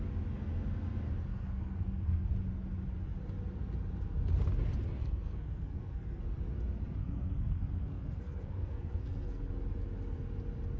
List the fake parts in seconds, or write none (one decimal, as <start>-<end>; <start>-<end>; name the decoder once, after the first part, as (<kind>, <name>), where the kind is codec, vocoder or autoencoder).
1.3-2.3 (codec, SNAC); 5.0-6.2; 7.0-9.5